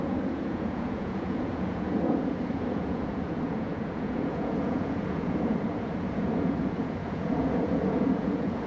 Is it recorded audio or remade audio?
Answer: remade